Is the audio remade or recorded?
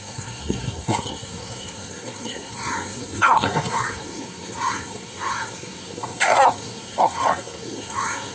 remade